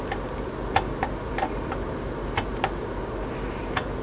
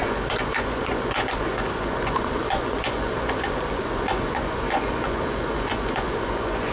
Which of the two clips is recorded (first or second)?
first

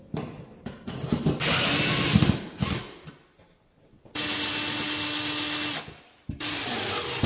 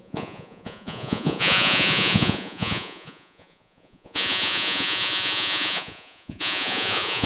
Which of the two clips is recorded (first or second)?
first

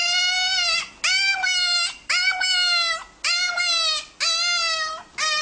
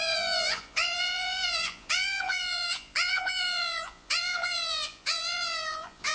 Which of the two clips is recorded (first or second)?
first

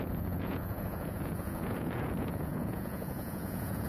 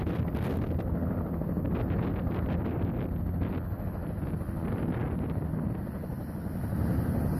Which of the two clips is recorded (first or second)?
second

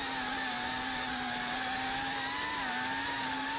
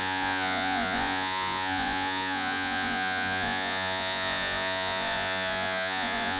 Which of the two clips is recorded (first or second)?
first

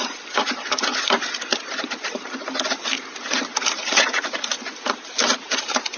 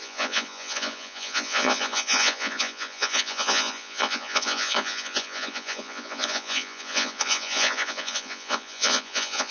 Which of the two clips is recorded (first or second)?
first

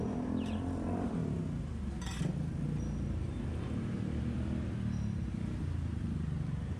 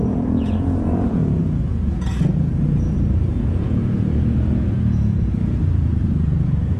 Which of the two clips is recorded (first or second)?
first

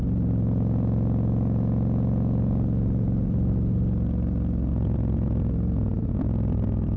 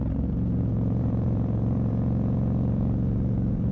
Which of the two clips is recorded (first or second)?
first